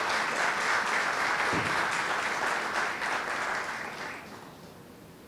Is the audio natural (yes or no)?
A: yes